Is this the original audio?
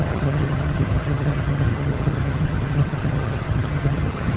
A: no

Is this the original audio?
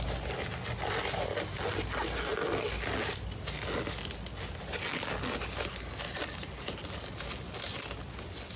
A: yes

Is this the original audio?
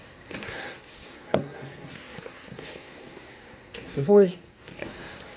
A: no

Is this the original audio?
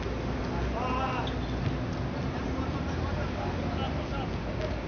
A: yes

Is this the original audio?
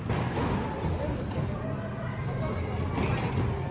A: yes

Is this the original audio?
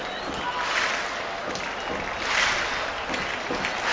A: yes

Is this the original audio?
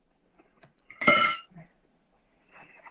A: no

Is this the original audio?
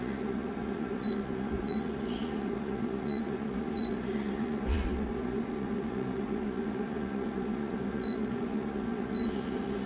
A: no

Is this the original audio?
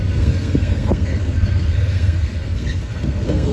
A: no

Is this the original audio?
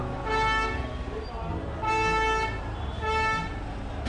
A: yes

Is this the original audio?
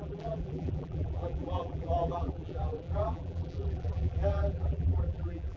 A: no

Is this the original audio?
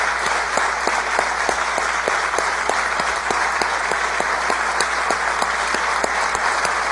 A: no